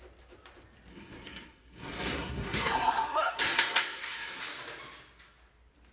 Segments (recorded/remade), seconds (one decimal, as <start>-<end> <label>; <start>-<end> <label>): 0.0-0.9 recorded; 0.9-4.4 remade; 4.4-5.9 recorded